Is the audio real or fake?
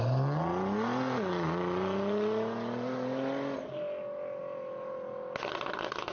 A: real